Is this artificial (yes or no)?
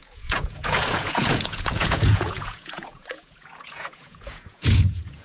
yes